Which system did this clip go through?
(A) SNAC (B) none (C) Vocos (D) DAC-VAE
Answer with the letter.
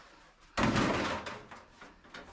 B